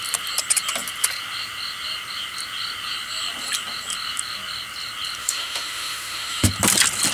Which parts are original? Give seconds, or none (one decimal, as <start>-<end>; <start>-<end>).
0.0-5.2; 6.5-7.1